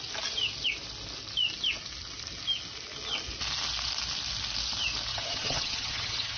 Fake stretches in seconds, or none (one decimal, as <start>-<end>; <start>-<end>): 5.1-6.4